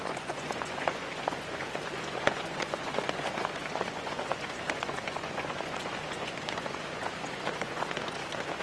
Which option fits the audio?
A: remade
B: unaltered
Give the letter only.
A